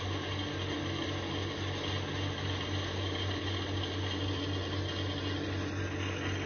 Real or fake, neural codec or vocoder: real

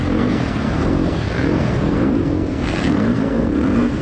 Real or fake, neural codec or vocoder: fake, codec, SNAC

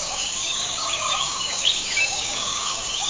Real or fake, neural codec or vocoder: fake, codec, DAC